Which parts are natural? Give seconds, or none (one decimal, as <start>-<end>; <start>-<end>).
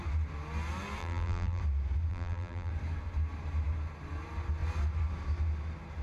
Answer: 0.0-1.0; 1.6-2.1; 2.7-6.0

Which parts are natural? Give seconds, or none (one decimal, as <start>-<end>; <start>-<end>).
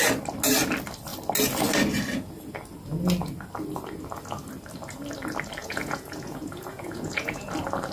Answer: 0.0-5.6; 7.5-7.9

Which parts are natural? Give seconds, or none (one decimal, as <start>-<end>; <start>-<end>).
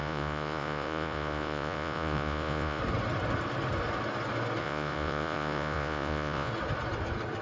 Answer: 2.8-4.6; 6.5-7.4